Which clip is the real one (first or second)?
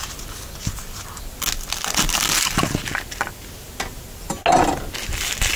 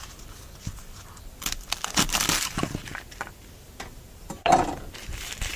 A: first